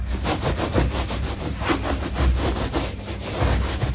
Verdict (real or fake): real